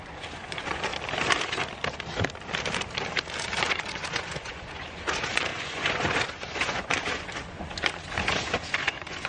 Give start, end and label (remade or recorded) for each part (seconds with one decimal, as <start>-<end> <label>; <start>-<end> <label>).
0.0-0.9 remade; 0.9-3.6 recorded; 3.6-9.3 remade